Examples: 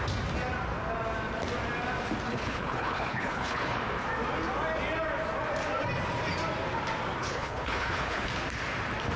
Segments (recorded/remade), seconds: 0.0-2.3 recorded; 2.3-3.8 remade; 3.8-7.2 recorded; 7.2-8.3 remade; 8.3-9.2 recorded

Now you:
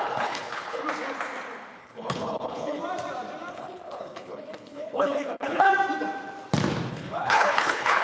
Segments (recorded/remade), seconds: 0.0-0.8 remade; 0.8-1.8 recorded; 1.8-2.8 remade; 2.8-3.5 recorded; 3.5-5.7 remade; 5.7-6.9 recorded; 6.9-8.0 remade

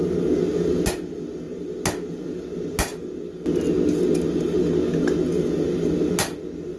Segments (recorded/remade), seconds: 0.0-6.8 recorded

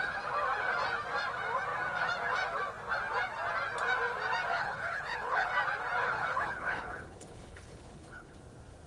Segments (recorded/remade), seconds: 0.0-4.5 recorded; 4.5-5.5 remade; 5.5-6.0 recorded; 6.0-8.4 remade; 8.4-8.9 recorded

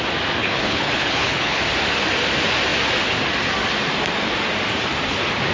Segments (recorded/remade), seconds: 0.0-0.4 recorded; 0.4-1.6 remade; 1.6-5.5 recorded

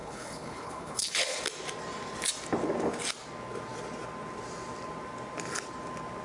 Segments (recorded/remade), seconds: 0.0-1.4 remade; 1.4-6.2 recorded

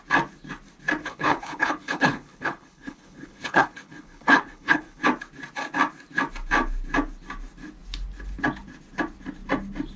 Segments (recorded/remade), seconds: 0.0-1.0 recorded; 1.0-5.0 remade; 5.0-10.0 recorded

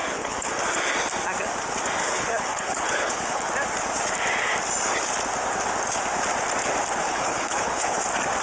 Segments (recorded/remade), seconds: 0.0-0.6 remade; 0.6-2.0 recorded; 2.0-3.5 remade; 3.5-7.0 recorded; 7.0-8.0 remade; 8.0-8.4 recorded